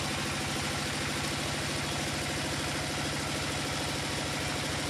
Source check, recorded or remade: recorded